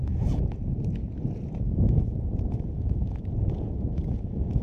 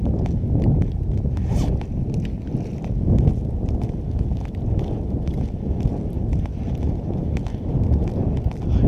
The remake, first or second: first